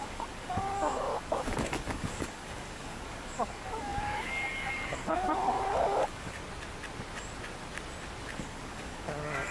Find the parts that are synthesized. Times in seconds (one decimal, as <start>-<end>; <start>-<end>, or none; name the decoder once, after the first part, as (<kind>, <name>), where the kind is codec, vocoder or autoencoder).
0.0-6.4 (codec, DAC); 8.2-9.5